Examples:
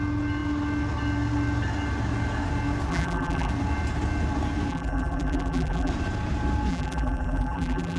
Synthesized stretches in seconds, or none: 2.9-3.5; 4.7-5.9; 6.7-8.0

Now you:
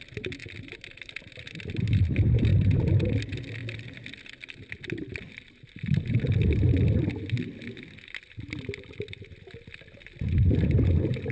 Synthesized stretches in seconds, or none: none